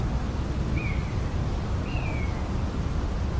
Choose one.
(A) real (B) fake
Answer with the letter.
A